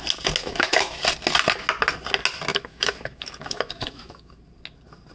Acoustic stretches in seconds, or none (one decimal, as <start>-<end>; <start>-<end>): 0.0-0.4; 1.0-2.5; 4.4-5.1